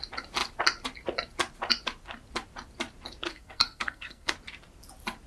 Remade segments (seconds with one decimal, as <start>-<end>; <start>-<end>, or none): 3.3-4.3